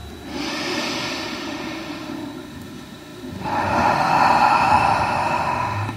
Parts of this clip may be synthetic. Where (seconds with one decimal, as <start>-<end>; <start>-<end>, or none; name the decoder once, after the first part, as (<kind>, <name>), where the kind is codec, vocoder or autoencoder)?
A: 0.5-6.0 (autoencoder, DAC-VAE)